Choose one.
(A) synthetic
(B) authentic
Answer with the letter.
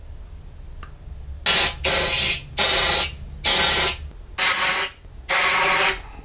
B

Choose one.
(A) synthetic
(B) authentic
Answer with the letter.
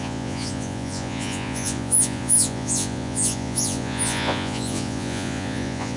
A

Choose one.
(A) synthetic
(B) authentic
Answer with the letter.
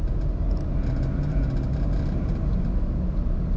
B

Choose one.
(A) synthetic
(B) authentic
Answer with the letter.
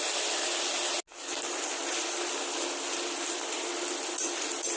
B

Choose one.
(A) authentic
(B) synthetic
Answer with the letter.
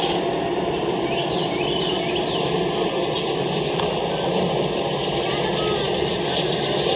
A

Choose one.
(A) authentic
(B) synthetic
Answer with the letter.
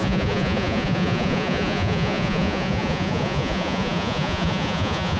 B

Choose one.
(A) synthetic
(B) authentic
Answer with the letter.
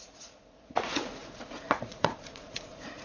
A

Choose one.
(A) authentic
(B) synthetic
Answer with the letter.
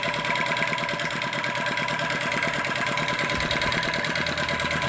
A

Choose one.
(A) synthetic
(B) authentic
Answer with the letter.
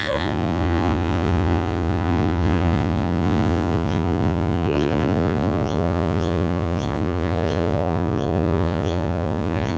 A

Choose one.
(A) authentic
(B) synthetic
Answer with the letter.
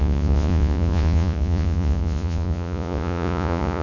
B